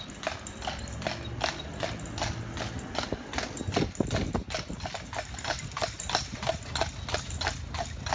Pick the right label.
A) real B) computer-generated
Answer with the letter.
A